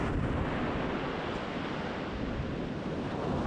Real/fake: real